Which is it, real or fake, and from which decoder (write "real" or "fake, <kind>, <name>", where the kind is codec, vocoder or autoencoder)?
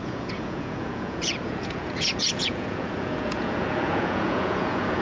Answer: fake, vocoder, Vocos